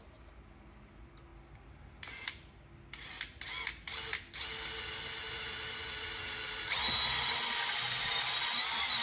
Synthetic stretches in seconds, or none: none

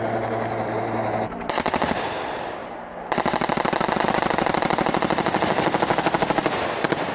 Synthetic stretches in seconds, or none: none

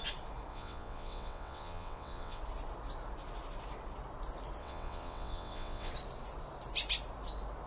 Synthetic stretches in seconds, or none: 0.5-2.4 (vocoder, WaveNeXt); 4.6-5.9

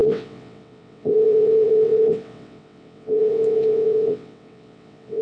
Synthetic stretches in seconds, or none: 0.0-5.2 (vocoder, WaveNeXt)

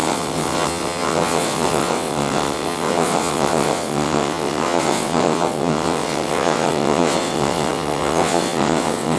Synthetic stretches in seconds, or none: 0.0-9.2 (vocoder, WaveNeXt)